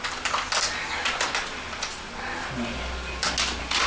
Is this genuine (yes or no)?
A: yes